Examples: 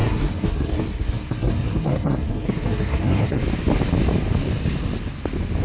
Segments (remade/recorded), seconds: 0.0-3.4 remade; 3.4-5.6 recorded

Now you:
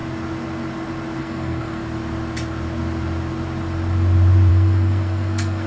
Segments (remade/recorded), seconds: 0.0-1.2 recorded; 1.2-1.8 remade; 1.8-4.5 recorded; 4.5-5.7 remade

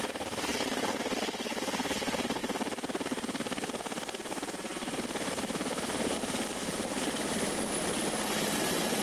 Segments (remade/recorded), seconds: 0.0-9.0 recorded

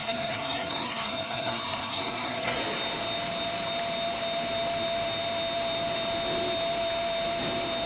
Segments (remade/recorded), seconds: 0.0-2.6 remade; 2.6-7.9 recorded

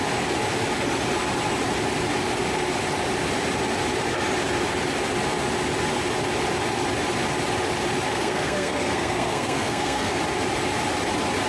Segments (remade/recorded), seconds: 0.0-8.1 recorded; 8.1-10.2 remade; 10.2-11.5 recorded

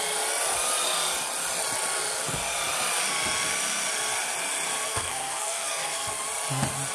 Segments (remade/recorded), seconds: 0.0-4.8 recorded; 4.8-6.1 remade; 6.1-6.9 recorded

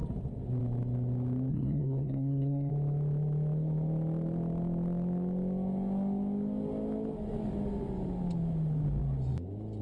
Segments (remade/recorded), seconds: 0.0-1.5 recorded; 1.5-2.7 remade; 2.7-9.8 recorded